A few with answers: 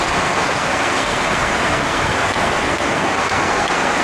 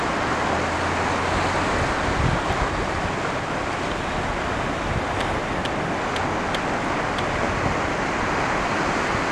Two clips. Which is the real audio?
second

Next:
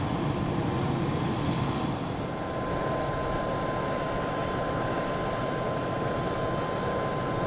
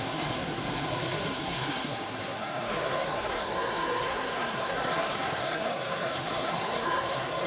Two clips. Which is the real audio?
first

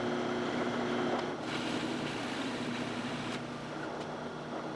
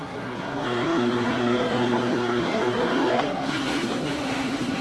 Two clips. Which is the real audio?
first